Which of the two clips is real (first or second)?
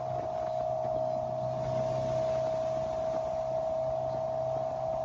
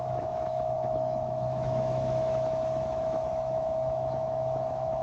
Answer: first